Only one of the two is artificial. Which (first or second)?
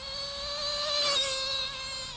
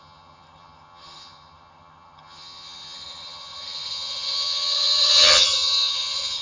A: second